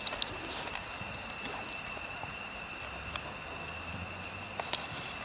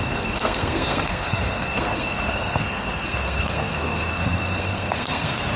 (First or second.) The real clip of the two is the first